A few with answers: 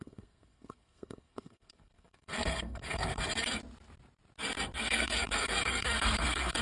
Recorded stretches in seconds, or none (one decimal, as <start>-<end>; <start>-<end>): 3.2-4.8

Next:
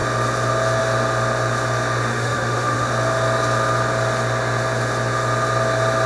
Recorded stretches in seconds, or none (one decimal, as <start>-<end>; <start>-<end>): 0.0-2.1; 2.9-6.1

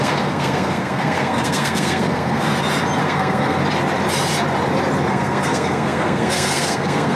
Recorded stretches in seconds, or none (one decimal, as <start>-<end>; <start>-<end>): 2.5-3.0; 3.6-5.1

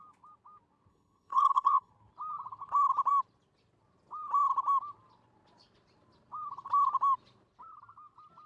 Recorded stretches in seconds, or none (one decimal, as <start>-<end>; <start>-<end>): 0.0-0.9; 1.9-8.5

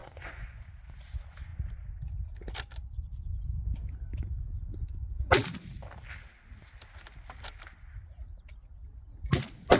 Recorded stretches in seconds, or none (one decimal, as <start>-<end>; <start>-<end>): 0.7-9.8